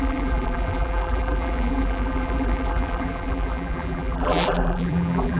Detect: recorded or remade remade